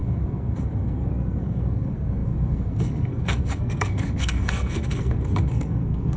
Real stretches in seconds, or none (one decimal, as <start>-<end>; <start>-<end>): none

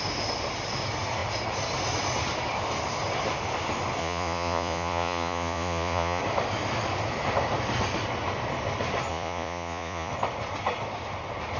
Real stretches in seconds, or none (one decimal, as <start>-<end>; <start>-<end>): 0.0-4.0; 6.2-9.1; 10.1-11.6

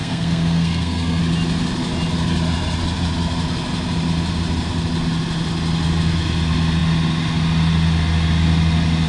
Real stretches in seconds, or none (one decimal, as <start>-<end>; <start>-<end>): 1.2-9.1

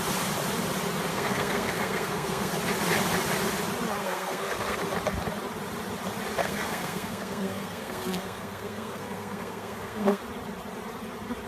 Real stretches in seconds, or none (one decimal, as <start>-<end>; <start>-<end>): 0.0-1.1; 2.5-4.0; 4.8-6.4; 10.2-11.5

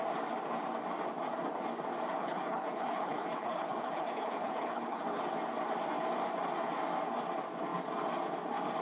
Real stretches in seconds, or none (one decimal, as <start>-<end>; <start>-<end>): 0.0-2.2; 5.2-8.8